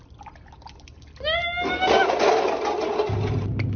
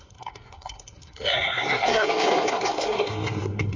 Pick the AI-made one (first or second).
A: second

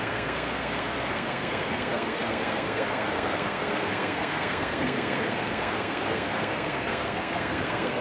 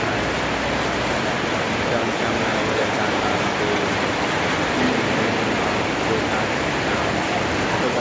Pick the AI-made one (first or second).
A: first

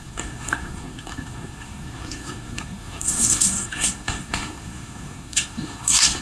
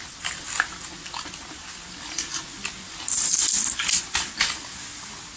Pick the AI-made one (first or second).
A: first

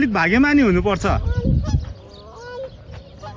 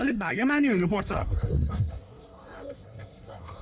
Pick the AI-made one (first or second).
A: second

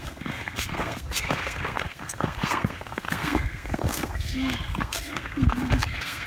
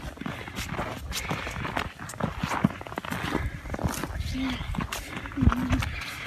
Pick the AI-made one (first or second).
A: first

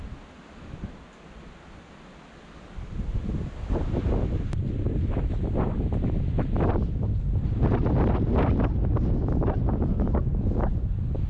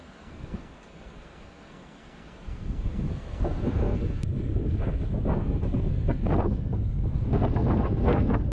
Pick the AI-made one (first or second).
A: second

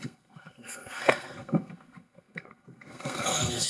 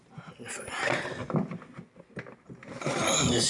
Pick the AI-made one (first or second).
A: first